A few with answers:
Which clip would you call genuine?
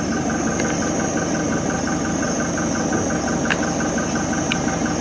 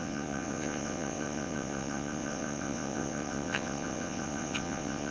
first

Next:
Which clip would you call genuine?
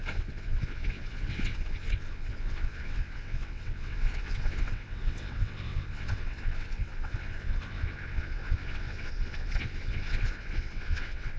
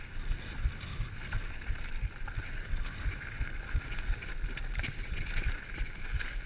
second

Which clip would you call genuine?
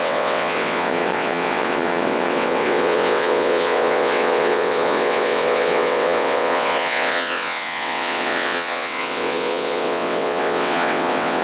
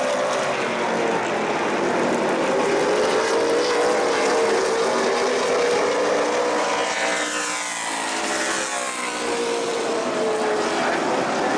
second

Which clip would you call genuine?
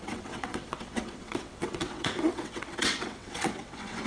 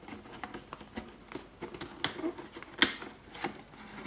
second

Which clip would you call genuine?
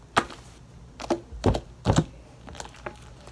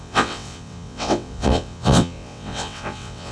first